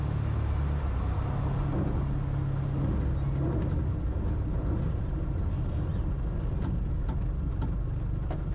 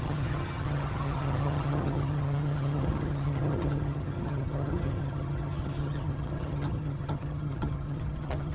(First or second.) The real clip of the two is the first